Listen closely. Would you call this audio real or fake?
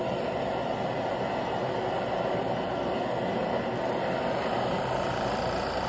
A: real